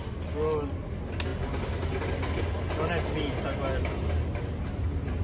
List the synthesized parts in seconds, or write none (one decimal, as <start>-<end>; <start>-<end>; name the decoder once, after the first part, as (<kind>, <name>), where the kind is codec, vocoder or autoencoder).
none